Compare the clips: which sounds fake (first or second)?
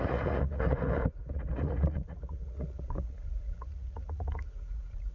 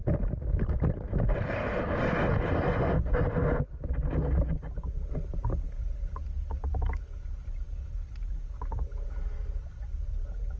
first